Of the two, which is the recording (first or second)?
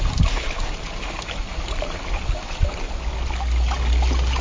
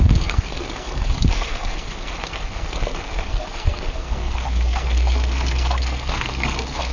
first